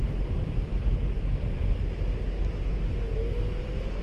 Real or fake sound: real